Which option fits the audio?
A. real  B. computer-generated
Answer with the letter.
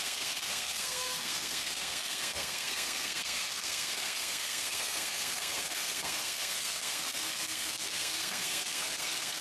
B